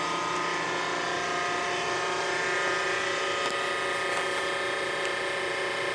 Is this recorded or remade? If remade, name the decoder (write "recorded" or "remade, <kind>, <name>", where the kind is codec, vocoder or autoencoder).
recorded